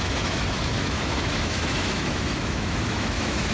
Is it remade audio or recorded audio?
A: remade